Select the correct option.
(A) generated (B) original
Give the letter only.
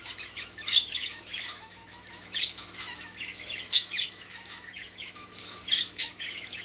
A